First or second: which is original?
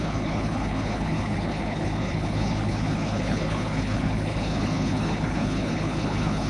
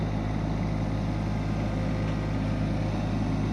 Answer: second